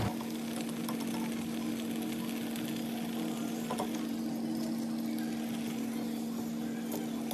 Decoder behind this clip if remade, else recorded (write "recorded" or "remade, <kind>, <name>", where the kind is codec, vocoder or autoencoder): recorded